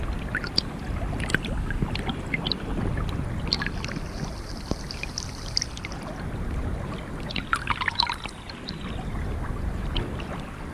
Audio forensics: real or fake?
real